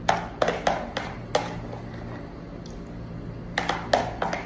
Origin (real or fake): real